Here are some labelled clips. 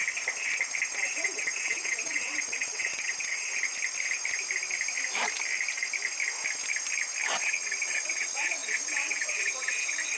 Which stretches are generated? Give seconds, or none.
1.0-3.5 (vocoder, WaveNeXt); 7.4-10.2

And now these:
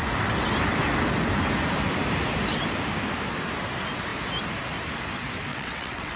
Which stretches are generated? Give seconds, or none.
5.5-6.2 (vocoder, WaveNeXt)

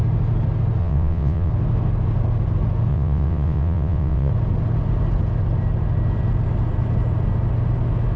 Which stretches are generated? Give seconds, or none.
0.8-1.5 (vocoder, WaveNeXt); 2.9-4.3

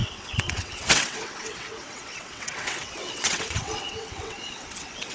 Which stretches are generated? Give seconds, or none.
0.0-5.1 (vocoder, WaveNeXt)